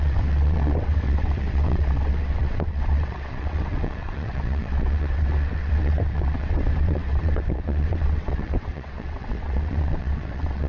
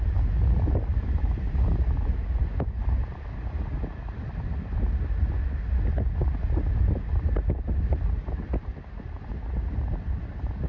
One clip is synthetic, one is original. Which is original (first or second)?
second